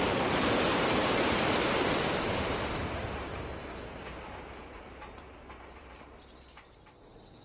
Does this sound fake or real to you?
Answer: fake